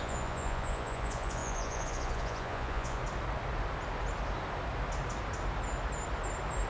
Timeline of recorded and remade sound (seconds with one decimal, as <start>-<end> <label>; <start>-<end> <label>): 0.0-3.0 remade; 3.0-6.7 recorded